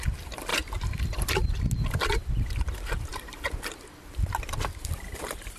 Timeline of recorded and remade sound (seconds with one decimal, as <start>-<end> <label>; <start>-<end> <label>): 0.0-5.6 recorded